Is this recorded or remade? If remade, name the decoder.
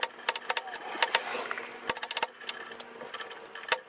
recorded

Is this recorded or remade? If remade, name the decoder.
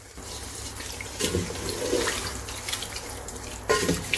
recorded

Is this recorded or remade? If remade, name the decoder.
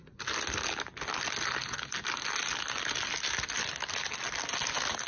recorded